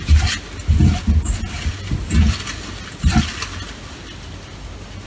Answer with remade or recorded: recorded